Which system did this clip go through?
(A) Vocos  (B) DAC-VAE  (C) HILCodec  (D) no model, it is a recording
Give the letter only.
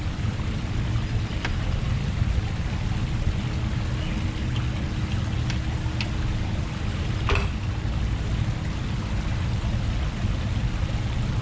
D